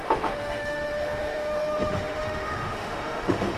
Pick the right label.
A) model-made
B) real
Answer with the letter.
A